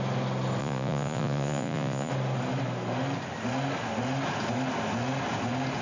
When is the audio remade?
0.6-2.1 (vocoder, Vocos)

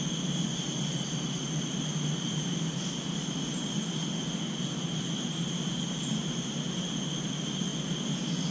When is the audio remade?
none

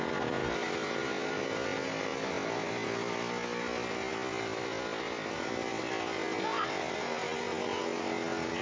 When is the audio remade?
none

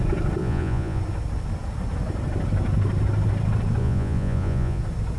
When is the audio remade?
0.4-1.0 (vocoder, Vocos); 3.8-4.8

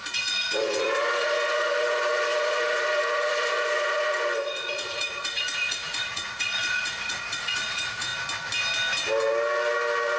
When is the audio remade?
0.0-8.1 (vocoder, Vocos)

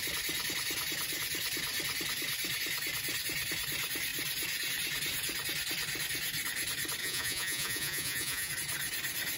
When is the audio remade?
7.0-8.5 (vocoder, Vocos)